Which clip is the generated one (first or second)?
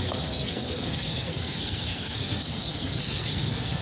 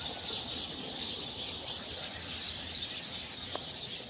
first